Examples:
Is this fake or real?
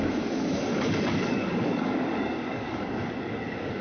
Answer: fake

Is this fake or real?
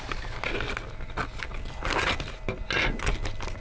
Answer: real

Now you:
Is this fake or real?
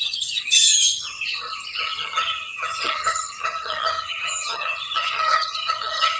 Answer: fake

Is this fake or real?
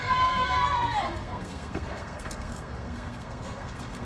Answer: fake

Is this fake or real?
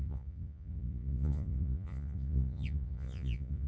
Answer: fake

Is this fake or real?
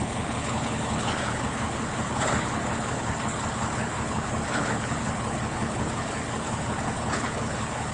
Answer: fake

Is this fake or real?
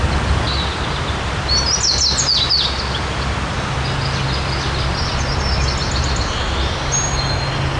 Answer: real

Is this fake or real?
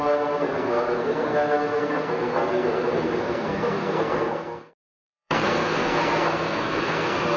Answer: fake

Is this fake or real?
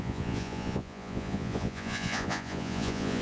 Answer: fake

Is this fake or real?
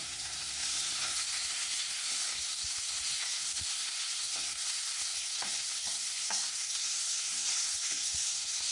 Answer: fake